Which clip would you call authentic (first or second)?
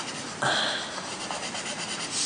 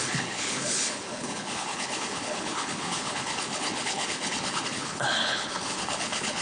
first